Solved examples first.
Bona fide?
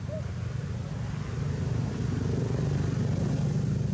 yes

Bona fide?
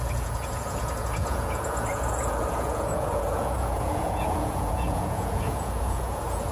no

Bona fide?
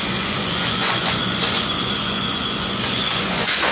no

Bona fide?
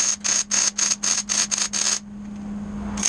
yes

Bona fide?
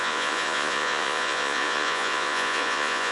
no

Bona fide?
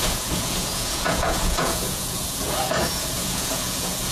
no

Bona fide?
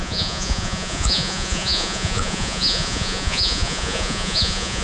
no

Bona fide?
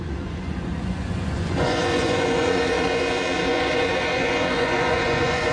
no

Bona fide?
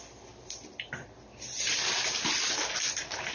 yes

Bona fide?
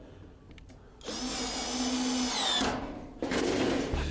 yes